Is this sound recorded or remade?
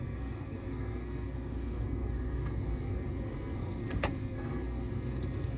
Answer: remade